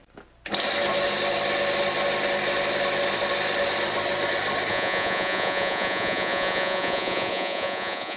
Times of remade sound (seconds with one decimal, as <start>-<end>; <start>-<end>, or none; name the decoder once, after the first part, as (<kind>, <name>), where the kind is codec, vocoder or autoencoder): 4.7-8.2 (vocoder, Vocos)